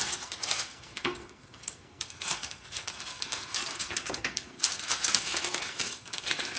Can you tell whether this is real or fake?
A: fake